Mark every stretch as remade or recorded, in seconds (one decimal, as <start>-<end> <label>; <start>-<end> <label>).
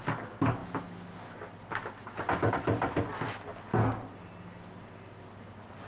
0.0-5.9 recorded